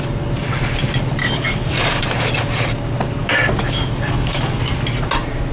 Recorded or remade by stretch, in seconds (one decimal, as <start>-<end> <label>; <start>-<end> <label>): 0.0-1.2 recorded; 1.2-2.0 remade; 2.0-3.2 recorded; 3.2-4.6 remade; 4.6-5.5 recorded